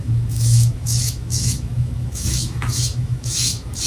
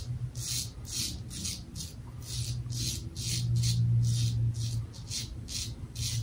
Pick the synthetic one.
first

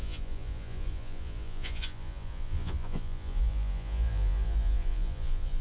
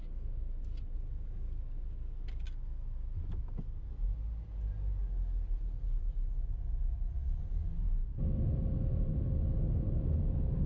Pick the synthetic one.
first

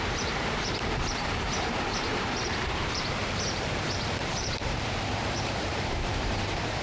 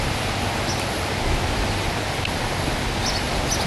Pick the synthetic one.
first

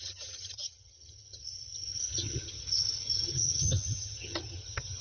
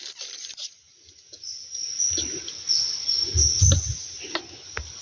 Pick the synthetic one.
first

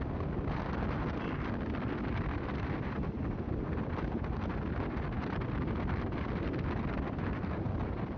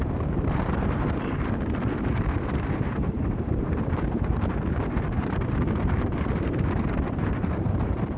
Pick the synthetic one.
second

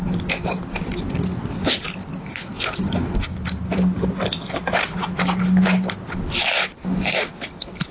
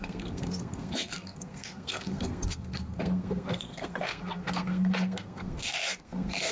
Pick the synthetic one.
second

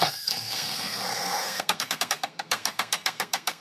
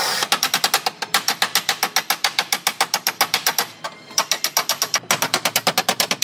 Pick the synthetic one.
first